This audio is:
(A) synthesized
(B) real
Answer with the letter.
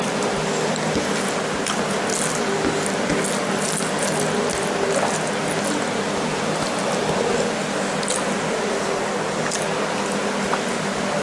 B